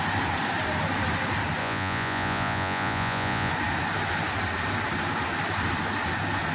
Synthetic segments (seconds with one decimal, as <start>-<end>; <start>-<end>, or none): 1.6-3.5